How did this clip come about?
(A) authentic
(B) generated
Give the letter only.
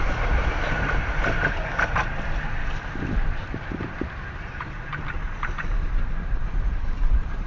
A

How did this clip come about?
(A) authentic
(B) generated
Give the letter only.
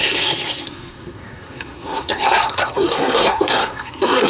B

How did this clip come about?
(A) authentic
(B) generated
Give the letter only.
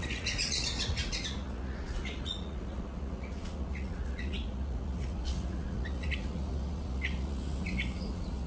B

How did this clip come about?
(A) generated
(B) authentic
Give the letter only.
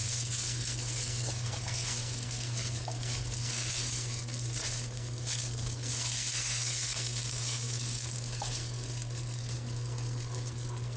A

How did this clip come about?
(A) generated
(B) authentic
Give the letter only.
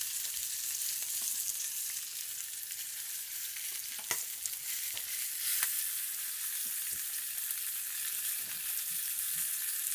B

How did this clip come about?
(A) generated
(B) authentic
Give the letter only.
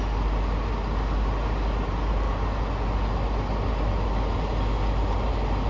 B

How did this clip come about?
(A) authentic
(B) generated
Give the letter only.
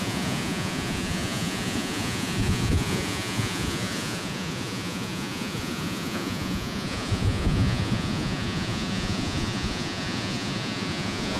B